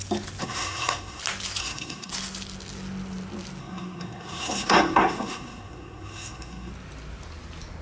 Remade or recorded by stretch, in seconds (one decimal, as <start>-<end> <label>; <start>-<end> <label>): 0.0-0.4 recorded; 0.4-1.2 remade; 1.2-1.6 recorded; 1.6-2.1 remade; 2.1-3.6 recorded; 3.6-6.7 remade; 6.7-7.8 recorded